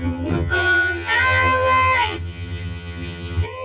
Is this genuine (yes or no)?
no